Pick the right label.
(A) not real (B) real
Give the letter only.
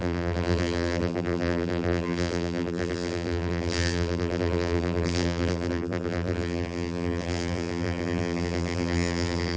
A